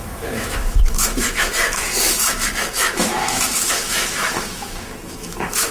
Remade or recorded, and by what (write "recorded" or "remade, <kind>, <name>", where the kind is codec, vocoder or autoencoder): remade, autoencoder, DAC-VAE